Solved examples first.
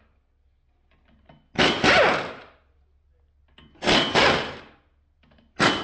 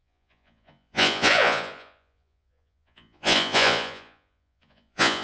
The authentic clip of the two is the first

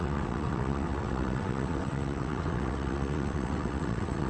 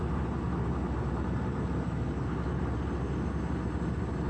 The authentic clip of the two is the second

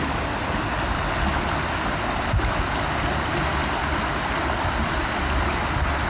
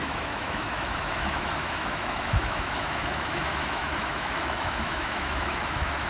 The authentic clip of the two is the first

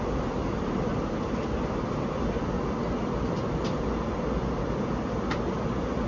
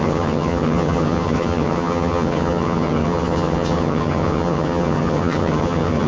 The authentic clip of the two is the first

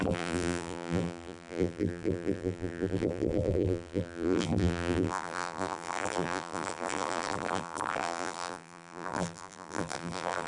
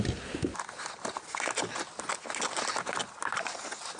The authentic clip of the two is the second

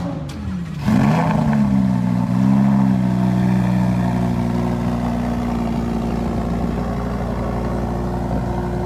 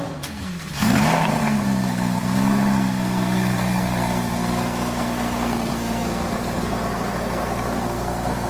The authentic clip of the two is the first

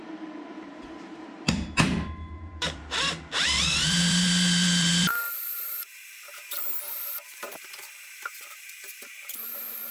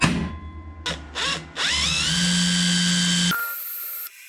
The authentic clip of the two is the second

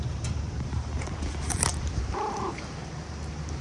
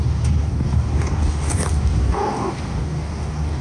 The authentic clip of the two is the first